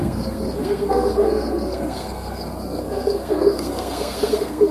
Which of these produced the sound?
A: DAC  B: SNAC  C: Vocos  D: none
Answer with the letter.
B